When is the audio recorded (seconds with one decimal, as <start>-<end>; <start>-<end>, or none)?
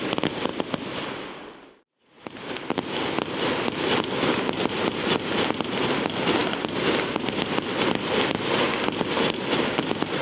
0.0-10.2